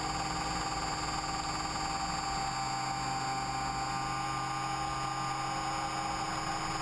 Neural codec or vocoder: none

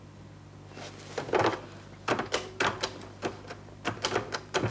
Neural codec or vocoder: none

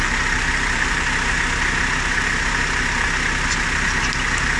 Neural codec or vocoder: none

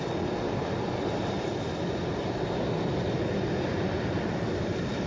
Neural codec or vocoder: none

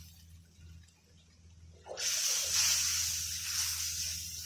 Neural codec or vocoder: none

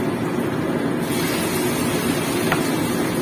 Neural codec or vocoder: none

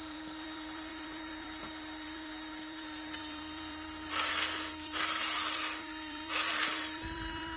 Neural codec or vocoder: vocoder, BigVGAN v2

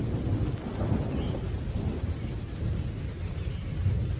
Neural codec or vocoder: none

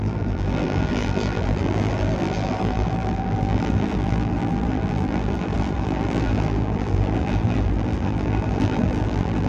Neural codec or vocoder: vocoder, BigVGAN v2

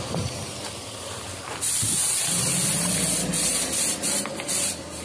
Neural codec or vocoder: vocoder, BigVGAN v2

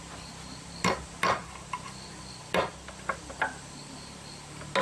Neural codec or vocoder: none